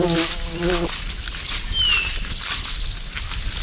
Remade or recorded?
recorded